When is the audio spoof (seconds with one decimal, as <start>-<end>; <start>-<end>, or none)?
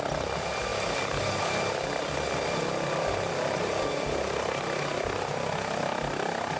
none